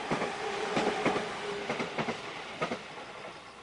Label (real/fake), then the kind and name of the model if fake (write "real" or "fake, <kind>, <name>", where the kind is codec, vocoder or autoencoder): fake, vocoder, BigVGAN v2